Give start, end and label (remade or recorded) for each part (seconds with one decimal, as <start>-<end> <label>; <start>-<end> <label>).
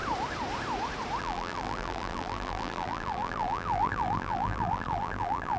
0.0-1.2 recorded; 1.2-5.6 remade